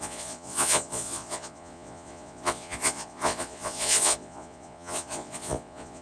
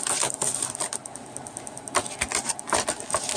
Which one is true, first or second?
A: second